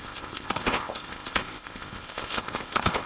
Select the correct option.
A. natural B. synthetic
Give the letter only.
B